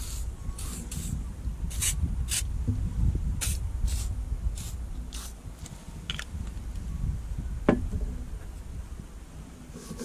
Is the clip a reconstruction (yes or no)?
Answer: no